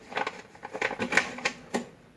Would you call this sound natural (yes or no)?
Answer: yes